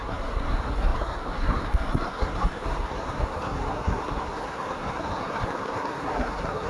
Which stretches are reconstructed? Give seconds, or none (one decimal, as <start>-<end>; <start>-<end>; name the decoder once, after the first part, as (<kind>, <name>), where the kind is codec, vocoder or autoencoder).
0.0-6.7 (codec, SNAC)